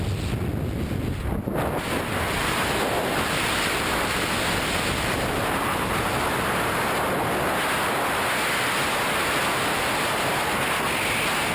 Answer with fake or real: real